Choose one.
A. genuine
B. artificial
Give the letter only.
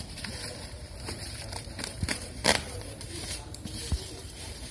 B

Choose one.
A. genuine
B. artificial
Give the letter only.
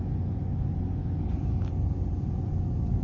A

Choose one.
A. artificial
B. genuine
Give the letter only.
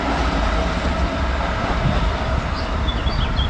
B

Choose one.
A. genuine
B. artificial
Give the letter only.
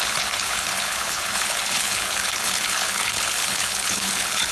B